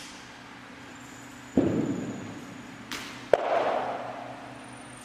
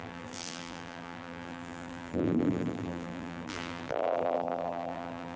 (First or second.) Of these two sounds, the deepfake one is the second